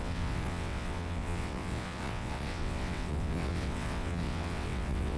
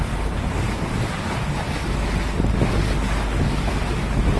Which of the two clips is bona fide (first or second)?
second